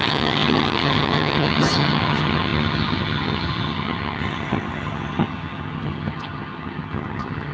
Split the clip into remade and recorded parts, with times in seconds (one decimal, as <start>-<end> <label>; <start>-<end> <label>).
0.0-7.5 remade